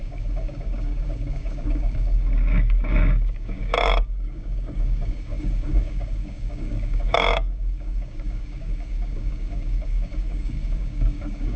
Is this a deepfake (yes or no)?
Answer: yes